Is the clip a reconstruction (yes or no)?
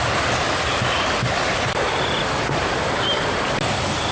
no